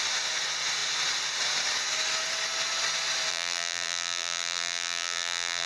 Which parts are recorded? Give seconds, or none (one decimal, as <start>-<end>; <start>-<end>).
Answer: 0.0-3.3